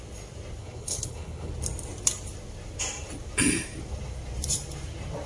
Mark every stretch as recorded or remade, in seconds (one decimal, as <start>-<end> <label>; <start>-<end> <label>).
0.0-0.6 recorded; 0.6-1.5 remade; 1.5-5.3 recorded